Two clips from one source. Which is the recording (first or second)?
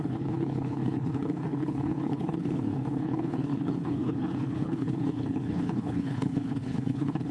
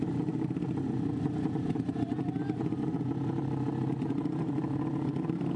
second